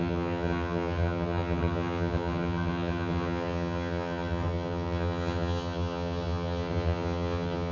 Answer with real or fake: fake